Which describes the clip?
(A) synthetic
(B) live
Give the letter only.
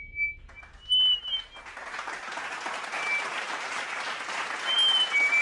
B